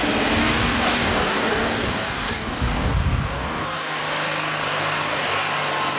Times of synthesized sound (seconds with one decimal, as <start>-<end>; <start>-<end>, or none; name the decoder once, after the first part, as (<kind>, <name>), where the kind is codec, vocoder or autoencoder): 0.4-4.0 (codec, DAC); 4.7-5.5